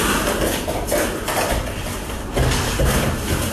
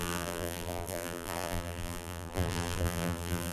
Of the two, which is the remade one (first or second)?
second